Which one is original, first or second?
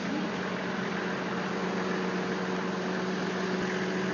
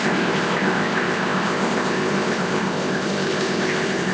first